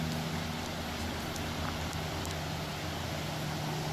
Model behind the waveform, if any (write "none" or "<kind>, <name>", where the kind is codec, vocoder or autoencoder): none